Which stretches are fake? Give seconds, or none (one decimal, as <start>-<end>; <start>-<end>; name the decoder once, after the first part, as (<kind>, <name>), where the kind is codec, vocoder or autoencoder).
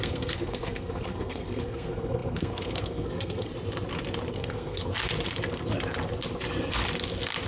0.0-3.5 (codec, SNAC); 4.3-4.8